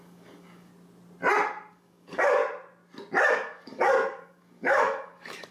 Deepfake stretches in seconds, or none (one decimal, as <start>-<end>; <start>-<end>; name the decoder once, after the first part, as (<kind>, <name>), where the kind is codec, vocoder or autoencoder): 0.0-0.7 (codec, DAC); 1.7-2.4; 3.3-5.5